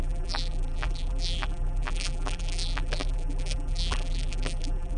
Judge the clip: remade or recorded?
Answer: remade